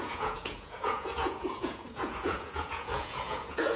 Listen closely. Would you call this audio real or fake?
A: fake